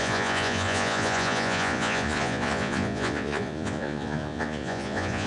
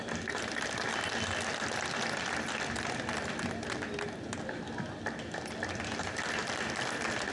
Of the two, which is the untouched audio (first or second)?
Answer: second